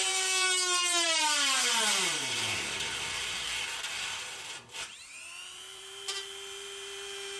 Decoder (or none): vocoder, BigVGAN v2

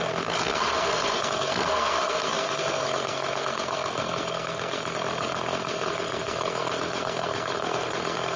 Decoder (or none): codec, SNAC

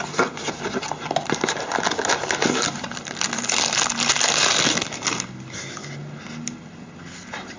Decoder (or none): none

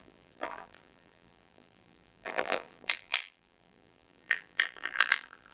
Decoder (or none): vocoder, BigVGAN v2